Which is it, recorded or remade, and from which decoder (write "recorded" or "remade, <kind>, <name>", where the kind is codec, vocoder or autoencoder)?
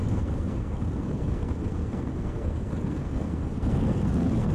remade, codec, SNAC